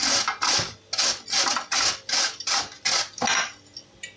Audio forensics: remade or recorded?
recorded